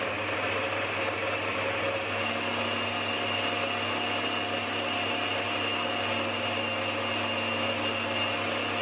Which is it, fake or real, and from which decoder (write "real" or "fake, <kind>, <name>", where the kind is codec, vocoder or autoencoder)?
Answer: real